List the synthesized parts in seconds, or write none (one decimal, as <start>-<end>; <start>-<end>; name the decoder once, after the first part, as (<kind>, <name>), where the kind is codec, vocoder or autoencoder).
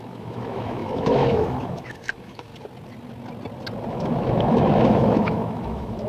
0.0-2.5 (autoencoder, DAC-VAE); 3.9-6.1